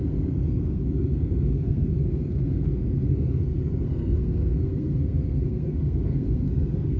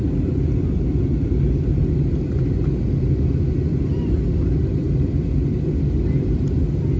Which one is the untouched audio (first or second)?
second